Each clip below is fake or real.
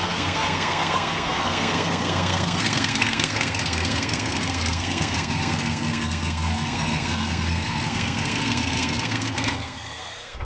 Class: fake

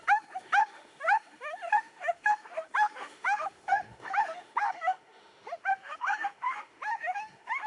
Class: fake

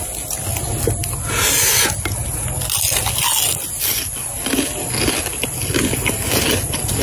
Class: real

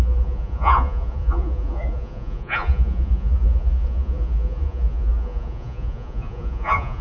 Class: fake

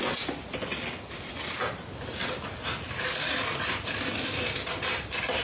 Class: real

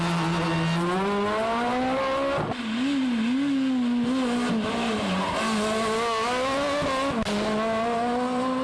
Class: real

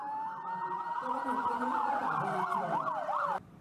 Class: fake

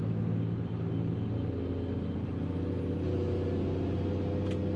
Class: real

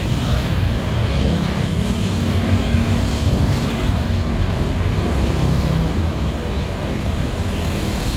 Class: fake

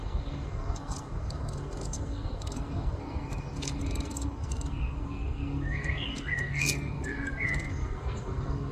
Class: fake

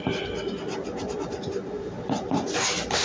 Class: real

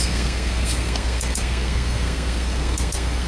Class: fake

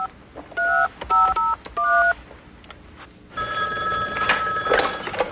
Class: real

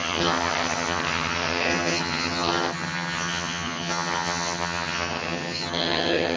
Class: fake